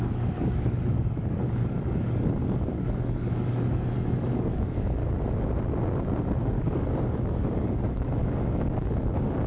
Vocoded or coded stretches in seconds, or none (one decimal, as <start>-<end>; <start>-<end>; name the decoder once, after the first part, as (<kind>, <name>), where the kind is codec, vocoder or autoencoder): 0.0-5.0 (codec, DAC); 6.4-9.5